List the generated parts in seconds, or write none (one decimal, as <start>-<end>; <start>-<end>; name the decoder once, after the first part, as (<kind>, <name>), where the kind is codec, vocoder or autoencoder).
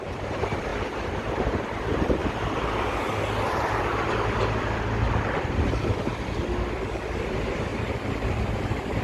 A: 0.0-2.2 (vocoder, BigVGAN v2); 3.8-6.1; 6.9-9.0